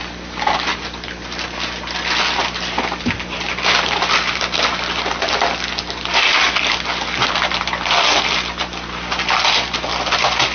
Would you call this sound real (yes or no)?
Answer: yes